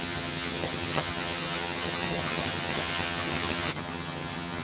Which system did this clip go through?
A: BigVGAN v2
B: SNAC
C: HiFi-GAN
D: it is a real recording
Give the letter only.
C